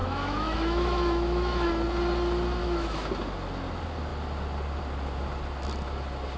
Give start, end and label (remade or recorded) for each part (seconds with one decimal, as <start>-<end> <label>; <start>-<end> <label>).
0.0-1.7 remade; 1.7-2.6 recorded; 2.6-3.1 remade; 3.1-6.4 recorded